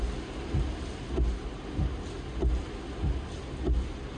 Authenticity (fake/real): real